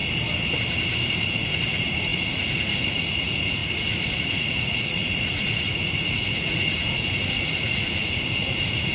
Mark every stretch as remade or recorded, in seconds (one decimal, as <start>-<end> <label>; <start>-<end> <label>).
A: 0.0-1.2 recorded; 1.2-8.9 remade